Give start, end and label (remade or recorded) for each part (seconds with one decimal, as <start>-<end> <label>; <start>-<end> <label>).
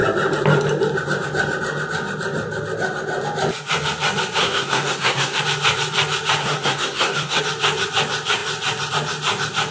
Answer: 0.0-4.4 recorded; 4.4-5.4 remade; 5.4-6.4 recorded; 6.4-7.4 remade; 7.4-9.7 recorded